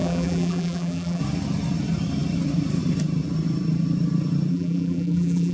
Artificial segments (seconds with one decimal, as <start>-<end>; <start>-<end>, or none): 0.0-1.2; 4.5-5.5